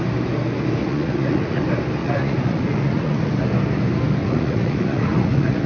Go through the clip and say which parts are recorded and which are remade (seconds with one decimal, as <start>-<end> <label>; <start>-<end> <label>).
0.0-0.8 recorded; 0.8-1.6 remade; 1.6-2.0 recorded; 2.0-3.3 remade; 3.3-4.2 recorded; 4.2-5.7 remade